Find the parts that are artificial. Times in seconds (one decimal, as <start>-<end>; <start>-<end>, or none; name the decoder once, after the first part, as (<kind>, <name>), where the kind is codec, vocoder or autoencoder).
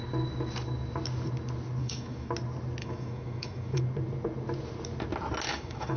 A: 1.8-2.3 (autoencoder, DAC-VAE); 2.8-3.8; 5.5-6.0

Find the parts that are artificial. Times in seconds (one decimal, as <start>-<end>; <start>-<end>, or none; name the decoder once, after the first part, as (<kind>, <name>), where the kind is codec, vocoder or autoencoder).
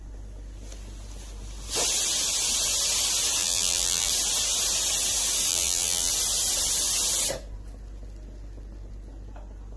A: 3.4-4.1 (vocoder, BigVGAN v2); 5.5-6.1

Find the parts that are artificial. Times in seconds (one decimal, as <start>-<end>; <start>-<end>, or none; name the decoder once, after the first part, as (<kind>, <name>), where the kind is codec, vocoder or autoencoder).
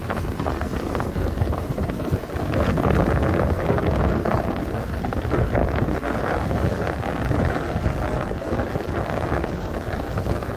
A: 0.0-10.6 (codec, SNAC)